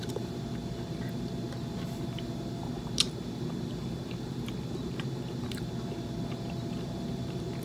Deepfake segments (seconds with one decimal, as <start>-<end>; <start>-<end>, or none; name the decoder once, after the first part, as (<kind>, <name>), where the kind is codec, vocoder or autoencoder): none